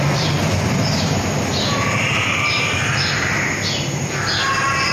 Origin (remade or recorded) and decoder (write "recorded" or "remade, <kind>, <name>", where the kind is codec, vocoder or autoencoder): recorded